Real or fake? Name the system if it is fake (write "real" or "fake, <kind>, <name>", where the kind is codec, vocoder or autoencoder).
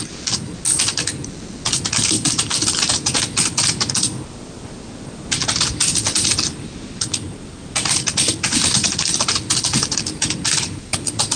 real